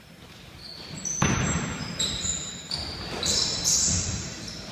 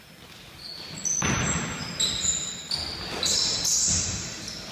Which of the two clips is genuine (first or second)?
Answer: second